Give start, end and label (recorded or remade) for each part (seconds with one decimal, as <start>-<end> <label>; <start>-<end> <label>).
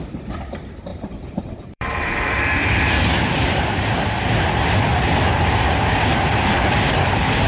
0.0-0.9 recorded; 0.9-3.9 remade; 3.9-6.1 recorded; 6.1-7.5 remade